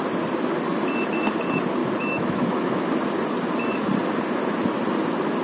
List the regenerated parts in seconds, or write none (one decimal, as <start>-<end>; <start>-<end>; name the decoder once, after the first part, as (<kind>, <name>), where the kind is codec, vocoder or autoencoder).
1.8-2.9 (autoencoder, DAC-VAE)

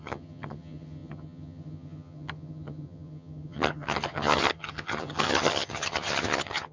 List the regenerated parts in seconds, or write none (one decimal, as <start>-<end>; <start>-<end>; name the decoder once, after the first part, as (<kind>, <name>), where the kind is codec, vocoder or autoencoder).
0.0-6.7 (vocoder, HiFi-GAN)

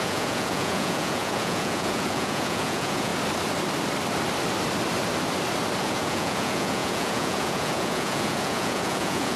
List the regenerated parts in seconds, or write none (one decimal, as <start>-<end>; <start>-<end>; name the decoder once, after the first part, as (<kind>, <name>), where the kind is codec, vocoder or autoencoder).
0.0-3.1 (vocoder, Vocos); 5.8-9.4

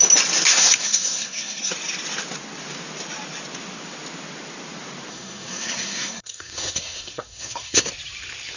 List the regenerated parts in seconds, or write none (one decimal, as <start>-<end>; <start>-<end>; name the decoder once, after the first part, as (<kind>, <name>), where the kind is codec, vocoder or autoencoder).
0.5-1.7 (codec, SNAC); 5.1-7.9

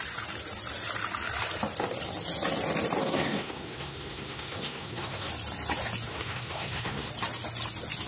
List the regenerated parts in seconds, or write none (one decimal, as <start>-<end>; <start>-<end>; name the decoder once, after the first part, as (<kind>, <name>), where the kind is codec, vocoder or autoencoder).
3.0-5.3 (codec, SNAC); 6.1-7.1

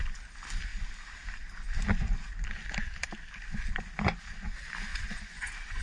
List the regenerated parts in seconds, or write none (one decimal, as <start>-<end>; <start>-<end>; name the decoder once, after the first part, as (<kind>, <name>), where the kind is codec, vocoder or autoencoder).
4.9-5.8 (vocoder, Vocos)

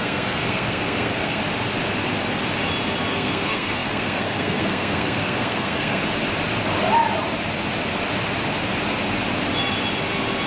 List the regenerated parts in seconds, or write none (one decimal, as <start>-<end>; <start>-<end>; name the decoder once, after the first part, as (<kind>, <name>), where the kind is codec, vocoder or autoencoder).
0.0-1.4 (codec, SNAC); 3.1-6.0

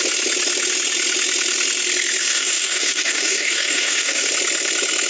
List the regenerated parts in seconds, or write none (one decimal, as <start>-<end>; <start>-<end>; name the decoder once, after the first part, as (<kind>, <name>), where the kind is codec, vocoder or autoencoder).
2.2-4.3 (codec, DAC)